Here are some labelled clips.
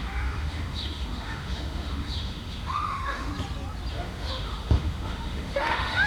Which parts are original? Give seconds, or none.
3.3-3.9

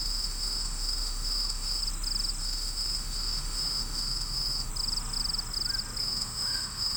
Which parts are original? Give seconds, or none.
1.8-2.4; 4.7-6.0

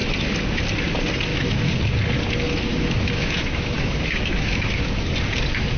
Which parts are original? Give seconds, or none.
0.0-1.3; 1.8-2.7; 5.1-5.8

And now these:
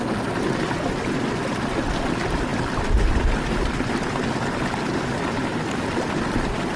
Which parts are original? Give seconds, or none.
0.0-6.8

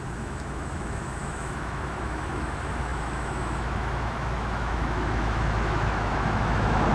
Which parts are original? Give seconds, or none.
none

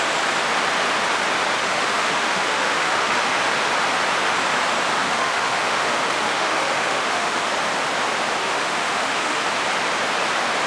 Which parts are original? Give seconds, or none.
0.0-1.6; 3.2-5.0; 7.5-8.4; 9.5-10.7